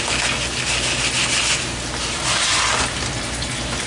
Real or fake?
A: real